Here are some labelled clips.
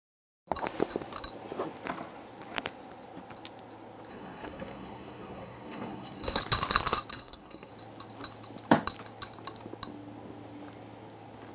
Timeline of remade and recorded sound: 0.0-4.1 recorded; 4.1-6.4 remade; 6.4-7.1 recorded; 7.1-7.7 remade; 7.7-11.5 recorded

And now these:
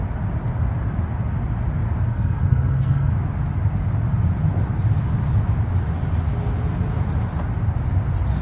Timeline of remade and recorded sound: 0.0-2.1 recorded; 2.1-3.1 remade; 3.1-8.4 recorded

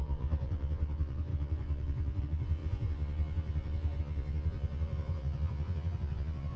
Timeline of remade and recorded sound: 0.0-6.6 remade

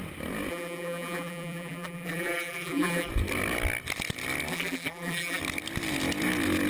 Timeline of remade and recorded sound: 0.0-0.5 recorded; 0.5-3.1 remade; 3.1-4.5 recorded; 4.5-5.4 remade; 5.4-6.7 recorded

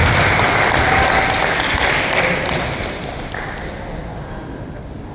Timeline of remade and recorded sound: 0.0-5.1 recorded

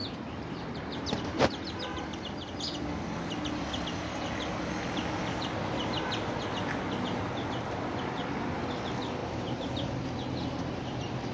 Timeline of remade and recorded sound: 0.0-2.2 remade; 2.2-9.2 recorded; 9.2-9.7 remade; 9.7-11.3 recorded

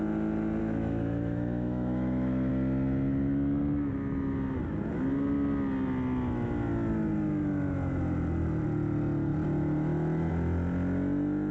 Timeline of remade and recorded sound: 0.0-0.6 recorded; 0.6-2.5 remade; 2.5-11.5 recorded